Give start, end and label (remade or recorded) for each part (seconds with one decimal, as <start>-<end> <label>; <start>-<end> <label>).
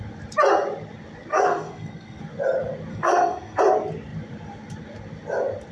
0.0-1.3 recorded; 1.3-2.2 remade; 2.2-2.9 recorded; 2.9-3.6 remade; 3.6-5.7 recorded